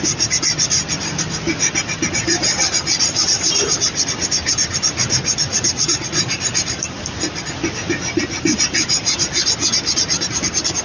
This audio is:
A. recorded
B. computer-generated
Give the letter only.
A